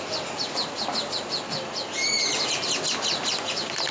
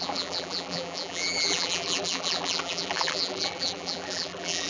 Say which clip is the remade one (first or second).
second